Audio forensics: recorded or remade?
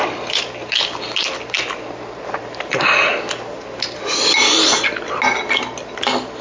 recorded